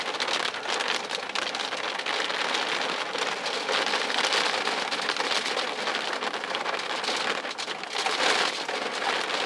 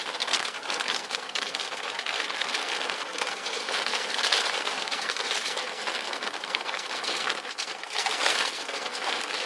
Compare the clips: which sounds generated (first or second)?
second